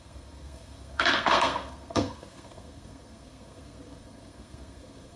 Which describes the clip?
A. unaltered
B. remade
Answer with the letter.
B